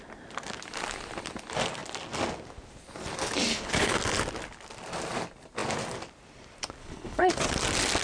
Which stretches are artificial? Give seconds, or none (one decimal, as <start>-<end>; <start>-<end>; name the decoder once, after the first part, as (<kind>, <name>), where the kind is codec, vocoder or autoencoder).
3.5-4.0 (codec, HILCodec); 6.8-7.3